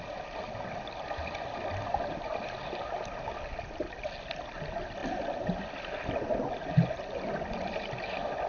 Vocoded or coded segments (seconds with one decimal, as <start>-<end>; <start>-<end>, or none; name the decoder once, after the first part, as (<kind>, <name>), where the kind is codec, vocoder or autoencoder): none

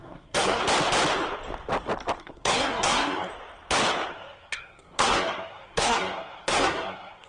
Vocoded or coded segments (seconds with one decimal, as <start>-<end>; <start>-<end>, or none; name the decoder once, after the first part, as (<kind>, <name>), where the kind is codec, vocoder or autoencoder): 0.0-0.6 (codec, SNAC); 2.2-3.3; 4.1-7.3